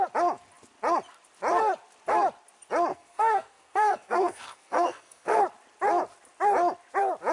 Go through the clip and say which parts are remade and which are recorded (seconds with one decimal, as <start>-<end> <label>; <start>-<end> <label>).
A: 0.0-2.9 recorded; 2.9-5.4 remade; 5.4-7.3 recorded